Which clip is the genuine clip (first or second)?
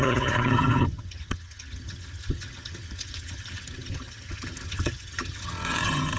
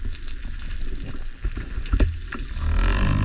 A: second